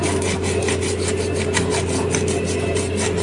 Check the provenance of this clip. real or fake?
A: real